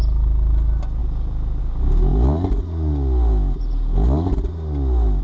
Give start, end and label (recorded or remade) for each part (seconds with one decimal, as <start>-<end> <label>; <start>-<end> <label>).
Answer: 0.0-1.0 recorded; 1.0-1.6 remade; 1.6-5.2 recorded